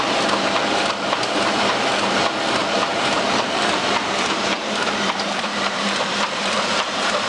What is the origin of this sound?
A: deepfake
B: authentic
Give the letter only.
A